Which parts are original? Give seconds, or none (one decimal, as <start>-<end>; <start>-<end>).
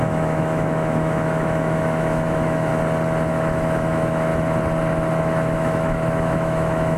2.7-3.3; 4.3-5.2